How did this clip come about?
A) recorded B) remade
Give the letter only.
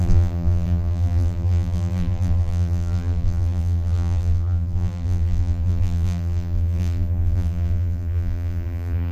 B